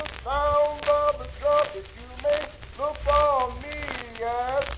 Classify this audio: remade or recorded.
recorded